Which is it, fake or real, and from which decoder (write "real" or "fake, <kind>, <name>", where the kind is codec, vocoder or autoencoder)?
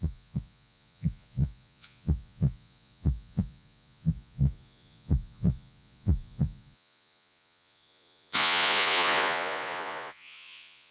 fake, vocoder, Vocos